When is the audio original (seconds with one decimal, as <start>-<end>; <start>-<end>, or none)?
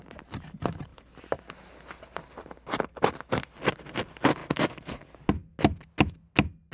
0.0-4.4; 5.0-6.7